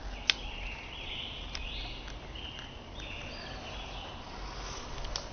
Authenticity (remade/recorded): recorded